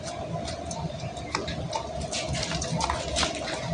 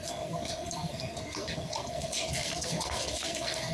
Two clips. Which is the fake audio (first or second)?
second